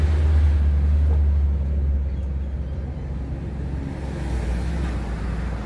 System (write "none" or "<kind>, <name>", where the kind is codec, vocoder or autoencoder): none